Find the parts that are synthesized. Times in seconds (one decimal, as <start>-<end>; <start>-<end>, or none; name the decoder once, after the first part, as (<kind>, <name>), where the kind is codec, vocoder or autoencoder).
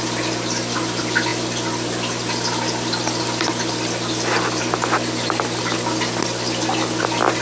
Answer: none